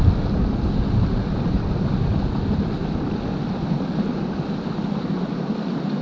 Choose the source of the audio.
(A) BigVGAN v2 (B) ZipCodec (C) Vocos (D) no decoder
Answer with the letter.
D